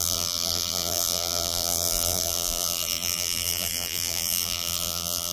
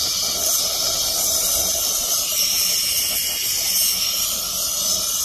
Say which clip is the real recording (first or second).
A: second